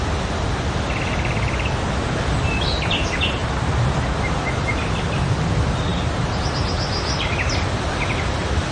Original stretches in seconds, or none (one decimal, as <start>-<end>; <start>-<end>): 0.0-8.7